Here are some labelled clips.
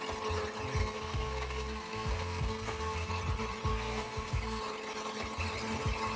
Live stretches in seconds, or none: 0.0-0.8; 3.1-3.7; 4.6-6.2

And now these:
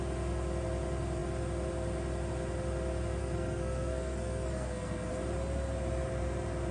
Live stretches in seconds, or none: 0.0-3.2; 5.1-6.7

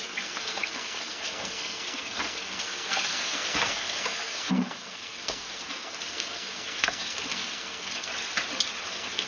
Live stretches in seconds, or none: 8.1-8.9

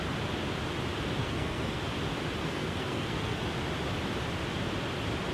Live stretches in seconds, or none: 0.0-1.2; 1.8-2.4; 3.4-5.3

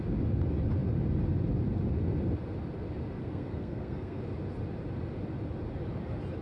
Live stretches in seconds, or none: 0.0-3.2; 4.2-6.4